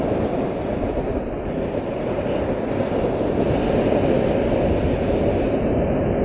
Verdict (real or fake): real